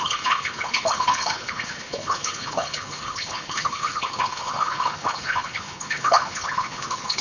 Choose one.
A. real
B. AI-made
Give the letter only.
B